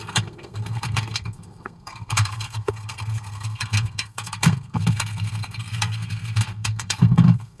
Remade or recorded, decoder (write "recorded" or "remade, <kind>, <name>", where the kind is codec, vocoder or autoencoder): remade, codec, SNAC